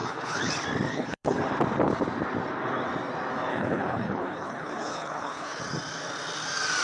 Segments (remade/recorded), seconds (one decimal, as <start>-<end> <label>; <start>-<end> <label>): 0.0-0.5 remade; 0.5-0.9 recorded; 0.9-1.4 remade; 1.4-3.5 recorded; 3.5-5.6 remade; 5.6-6.8 recorded